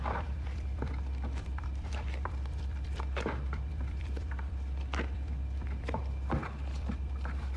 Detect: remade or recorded remade